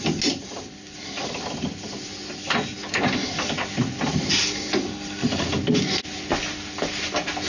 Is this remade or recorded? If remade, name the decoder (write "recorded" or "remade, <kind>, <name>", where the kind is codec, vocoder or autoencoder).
recorded